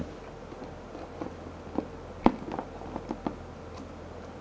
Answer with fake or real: real